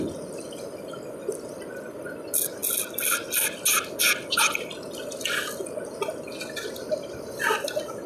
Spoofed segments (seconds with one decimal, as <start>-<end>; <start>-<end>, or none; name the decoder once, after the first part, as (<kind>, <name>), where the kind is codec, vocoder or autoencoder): none